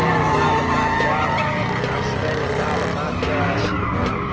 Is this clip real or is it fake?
real